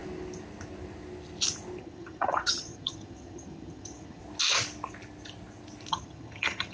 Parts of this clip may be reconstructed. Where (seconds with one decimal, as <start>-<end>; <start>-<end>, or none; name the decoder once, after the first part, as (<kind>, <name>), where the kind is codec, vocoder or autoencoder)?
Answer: 1.8-4.2 (vocoder, HiFi-GAN); 5.9-6.7